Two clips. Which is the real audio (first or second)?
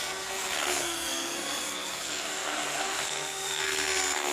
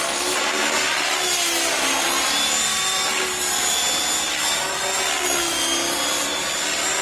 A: second